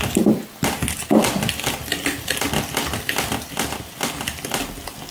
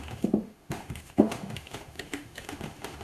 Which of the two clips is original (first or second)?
first